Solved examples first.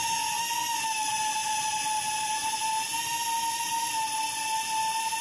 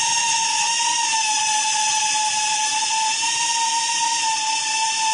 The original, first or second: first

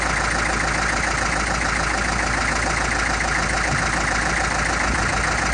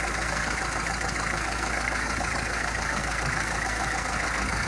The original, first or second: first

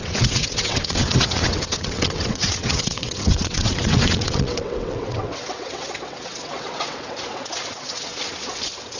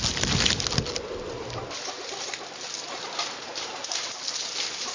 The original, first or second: second